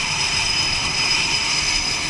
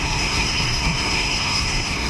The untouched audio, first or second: first